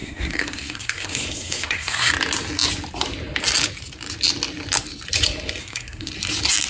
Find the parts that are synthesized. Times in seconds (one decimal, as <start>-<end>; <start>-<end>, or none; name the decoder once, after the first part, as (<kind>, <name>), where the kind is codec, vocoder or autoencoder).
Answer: 0.0-2.1 (codec, SNAC); 5.6-6.1

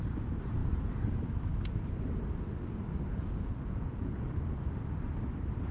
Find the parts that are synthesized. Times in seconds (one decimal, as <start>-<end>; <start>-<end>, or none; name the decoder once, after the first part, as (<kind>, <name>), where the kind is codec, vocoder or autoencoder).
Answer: 3.1-4.7 (vocoder, Vocos)

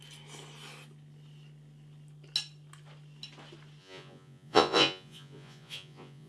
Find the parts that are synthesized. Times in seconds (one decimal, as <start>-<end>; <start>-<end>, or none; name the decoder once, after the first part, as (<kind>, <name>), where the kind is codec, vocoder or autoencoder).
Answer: 3.8-6.3 (vocoder, Vocos)

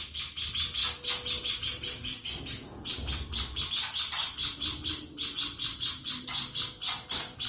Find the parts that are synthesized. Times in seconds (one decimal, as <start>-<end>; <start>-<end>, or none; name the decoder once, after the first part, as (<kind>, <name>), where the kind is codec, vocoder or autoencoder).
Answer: none

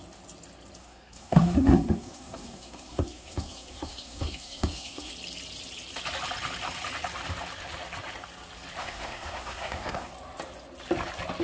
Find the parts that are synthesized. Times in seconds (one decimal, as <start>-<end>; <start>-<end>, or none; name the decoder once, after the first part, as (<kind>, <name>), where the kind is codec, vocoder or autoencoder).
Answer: 0.8-5.1 (codec, SNAC); 8.8-10.1

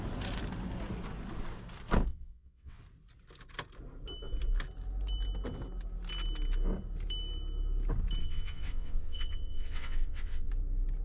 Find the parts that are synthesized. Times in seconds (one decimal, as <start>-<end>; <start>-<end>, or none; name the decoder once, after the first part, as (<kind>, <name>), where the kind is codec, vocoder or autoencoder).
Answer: 2.1-2.8 (vocoder, WaveNeXt); 8.2-10.5

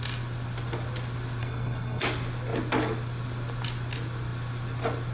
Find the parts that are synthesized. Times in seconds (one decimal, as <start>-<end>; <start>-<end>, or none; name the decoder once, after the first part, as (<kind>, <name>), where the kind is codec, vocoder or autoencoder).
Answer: 1.4-2.0 (codec, SNAC)